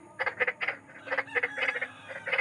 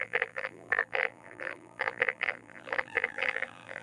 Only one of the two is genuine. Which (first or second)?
first